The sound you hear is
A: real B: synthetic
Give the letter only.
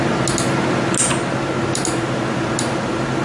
A